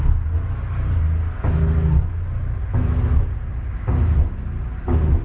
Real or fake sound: real